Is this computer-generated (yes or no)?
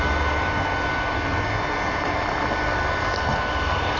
no